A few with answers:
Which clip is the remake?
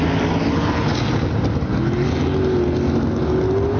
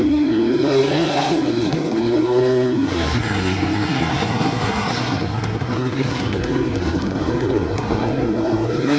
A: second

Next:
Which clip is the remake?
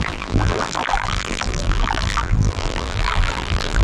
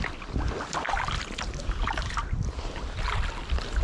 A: first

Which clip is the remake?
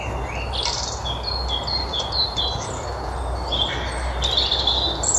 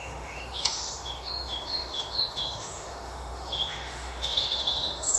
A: second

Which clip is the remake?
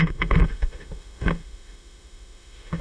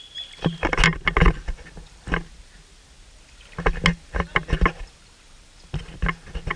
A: first